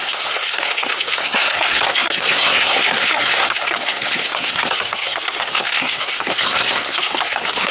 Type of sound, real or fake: fake